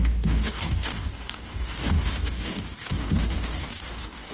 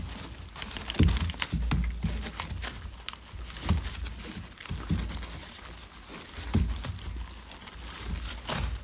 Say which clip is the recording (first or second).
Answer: second